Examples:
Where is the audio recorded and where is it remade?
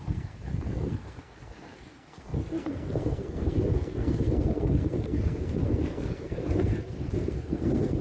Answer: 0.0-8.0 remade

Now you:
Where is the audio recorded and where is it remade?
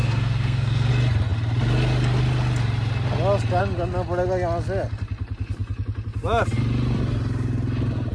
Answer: 0.0-0.9 remade; 0.9-8.1 recorded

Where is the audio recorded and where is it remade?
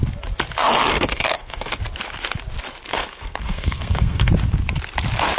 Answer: 0.0-0.9 recorded; 0.9-1.7 remade; 1.7-2.9 recorded; 2.9-4.3 remade; 4.3-5.4 recorded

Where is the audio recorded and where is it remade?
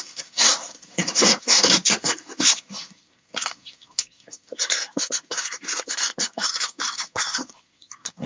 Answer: 0.0-8.3 remade